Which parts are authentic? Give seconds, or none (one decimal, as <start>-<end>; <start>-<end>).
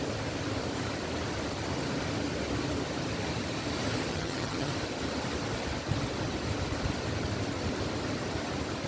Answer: 0.0-4.1; 4.7-8.9